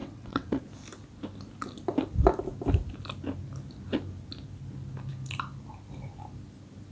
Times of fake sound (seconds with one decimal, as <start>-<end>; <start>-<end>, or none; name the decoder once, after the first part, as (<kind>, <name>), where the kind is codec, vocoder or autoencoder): 0.0-0.6 (vocoder, WaveNeXt)